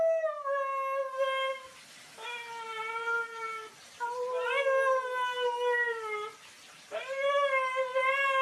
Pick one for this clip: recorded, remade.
recorded